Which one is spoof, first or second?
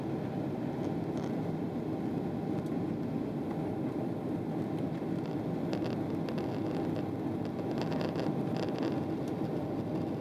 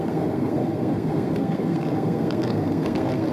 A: second